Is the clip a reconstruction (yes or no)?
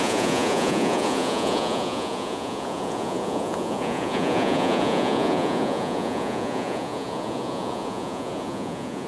yes